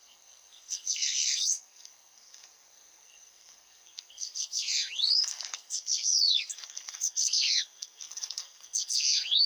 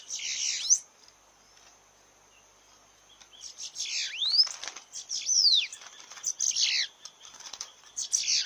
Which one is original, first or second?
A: second